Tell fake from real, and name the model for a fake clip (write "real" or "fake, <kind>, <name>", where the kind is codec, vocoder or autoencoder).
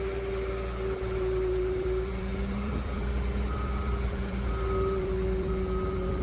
fake, vocoder, BigVGAN v2